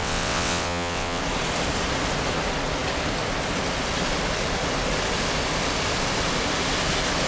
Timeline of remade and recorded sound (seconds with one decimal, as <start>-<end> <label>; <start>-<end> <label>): 0.0-1.2 remade; 1.2-7.3 recorded